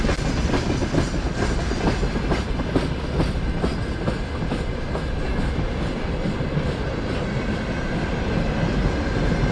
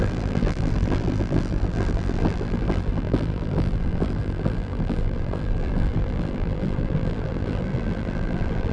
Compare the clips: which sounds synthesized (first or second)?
second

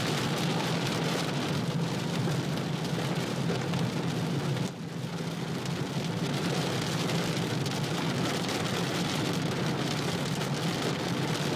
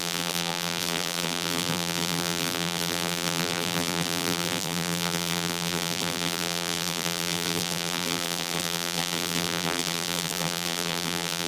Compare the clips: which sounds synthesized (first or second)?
second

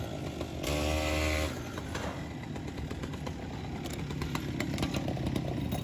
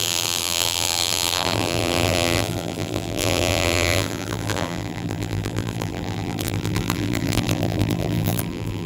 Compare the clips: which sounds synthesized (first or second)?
second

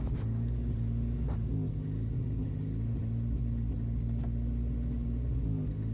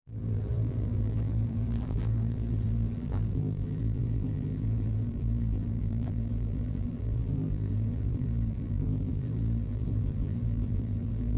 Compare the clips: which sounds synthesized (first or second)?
second